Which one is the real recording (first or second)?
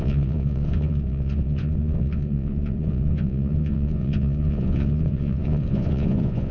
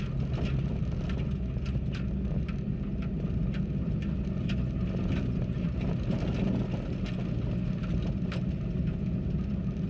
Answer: second